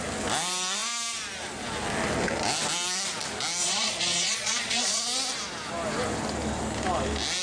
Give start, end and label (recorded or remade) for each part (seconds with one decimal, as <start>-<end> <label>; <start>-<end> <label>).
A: 0.0-3.6 recorded; 3.6-5.0 remade; 5.0-7.4 recorded